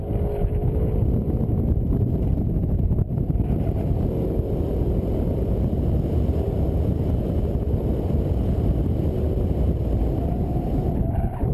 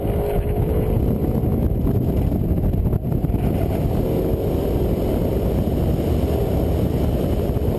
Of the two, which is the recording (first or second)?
second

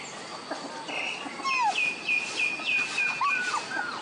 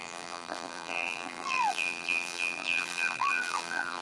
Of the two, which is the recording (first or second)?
first